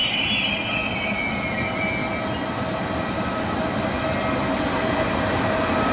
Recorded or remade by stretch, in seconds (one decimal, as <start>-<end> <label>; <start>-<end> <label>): 0.0-5.9 recorded